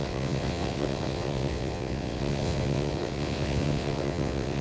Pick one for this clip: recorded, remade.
remade